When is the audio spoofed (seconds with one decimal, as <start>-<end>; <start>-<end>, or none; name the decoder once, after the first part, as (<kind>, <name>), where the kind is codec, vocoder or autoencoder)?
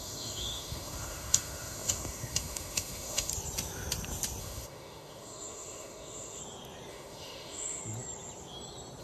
0.0-3.3 (autoencoder, DAC-VAE); 4.4-6.4; 6.9-7.8